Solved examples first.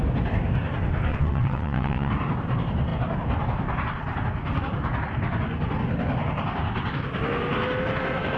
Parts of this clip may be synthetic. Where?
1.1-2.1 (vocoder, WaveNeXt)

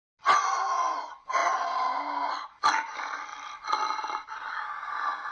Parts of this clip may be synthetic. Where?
3.3-4.5 (vocoder, BigVGAN v2)